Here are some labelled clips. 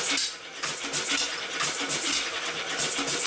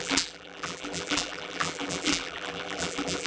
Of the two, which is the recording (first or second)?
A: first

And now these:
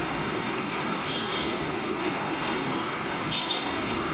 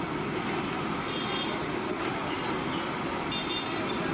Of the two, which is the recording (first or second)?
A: second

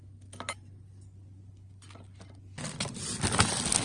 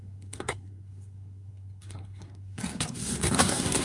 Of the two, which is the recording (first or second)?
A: first